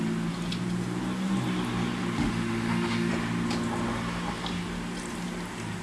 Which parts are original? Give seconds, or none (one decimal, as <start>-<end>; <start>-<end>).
0.0-2.2; 3.1-5.8